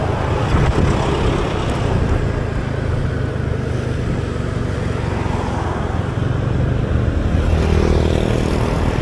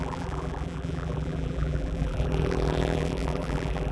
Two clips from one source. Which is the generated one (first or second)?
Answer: second